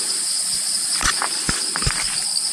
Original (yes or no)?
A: yes